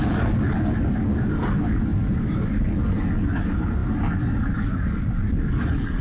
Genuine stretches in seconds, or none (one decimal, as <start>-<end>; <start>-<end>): 0.0-6.0

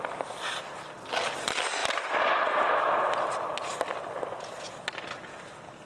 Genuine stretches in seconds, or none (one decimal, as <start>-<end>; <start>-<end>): 0.0-5.9

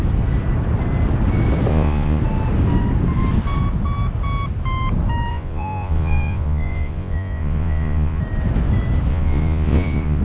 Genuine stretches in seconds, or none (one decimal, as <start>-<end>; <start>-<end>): 0.0-1.7; 2.2-5.3; 8.2-9.1

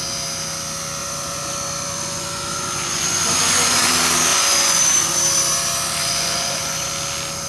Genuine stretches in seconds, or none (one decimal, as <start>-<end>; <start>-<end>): 0.0-1.0; 3.9-4.3; 5.2-6.0; 6.9-7.5

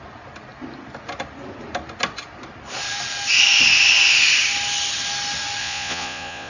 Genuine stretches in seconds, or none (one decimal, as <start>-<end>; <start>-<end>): 0.0-5.6

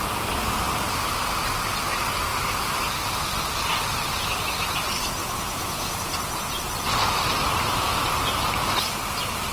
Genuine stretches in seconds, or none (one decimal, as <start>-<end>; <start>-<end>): 0.0-5.2; 6.5-9.5

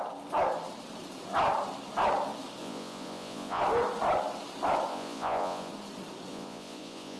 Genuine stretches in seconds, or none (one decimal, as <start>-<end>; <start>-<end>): 0.0-2.6; 3.6-4.9; 5.7-6.3